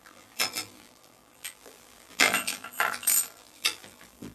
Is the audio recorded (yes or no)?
no